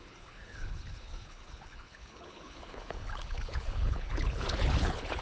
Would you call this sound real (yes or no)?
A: no